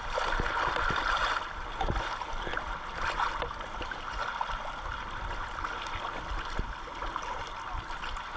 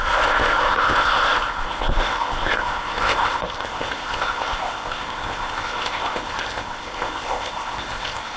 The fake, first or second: second